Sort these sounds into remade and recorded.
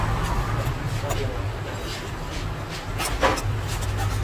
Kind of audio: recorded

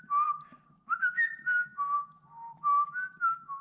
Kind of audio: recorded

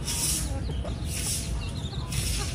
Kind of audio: recorded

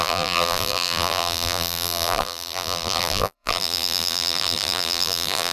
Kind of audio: remade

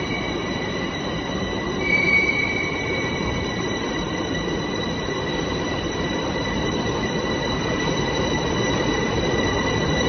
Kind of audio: remade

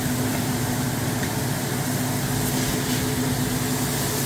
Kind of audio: recorded